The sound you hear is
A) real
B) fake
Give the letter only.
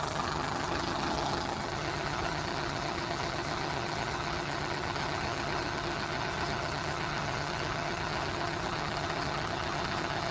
B